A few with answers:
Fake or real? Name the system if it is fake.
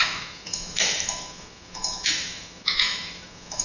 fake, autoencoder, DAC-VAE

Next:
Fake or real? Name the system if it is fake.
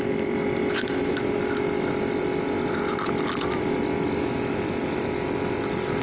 real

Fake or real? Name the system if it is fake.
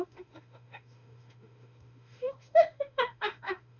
fake, autoencoder, DAC-VAE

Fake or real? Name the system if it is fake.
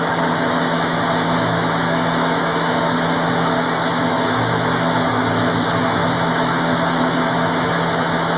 fake, autoencoder, DAC-VAE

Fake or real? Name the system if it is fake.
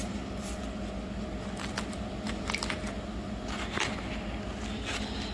real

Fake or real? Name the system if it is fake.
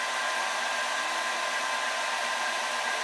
real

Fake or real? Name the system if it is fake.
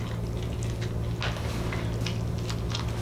real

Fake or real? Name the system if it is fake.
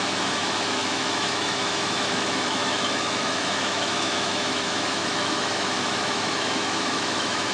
fake, autoencoder, DAC-VAE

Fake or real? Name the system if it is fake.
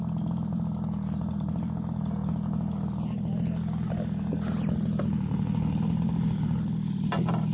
real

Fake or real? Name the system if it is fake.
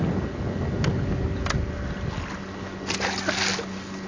real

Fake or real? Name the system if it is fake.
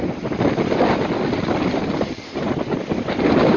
real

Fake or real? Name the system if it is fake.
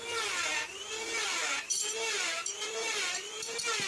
real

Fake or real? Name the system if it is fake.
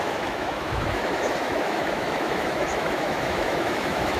fake, autoencoder, DAC-VAE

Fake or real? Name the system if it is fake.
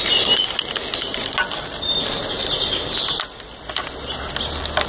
real